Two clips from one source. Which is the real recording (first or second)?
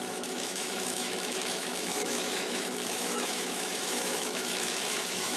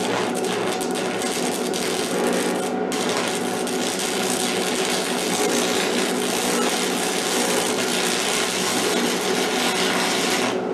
second